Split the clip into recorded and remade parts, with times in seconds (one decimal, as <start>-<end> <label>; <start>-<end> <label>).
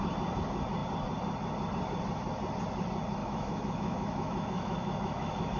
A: 0.0-3.2 recorded; 3.2-5.6 remade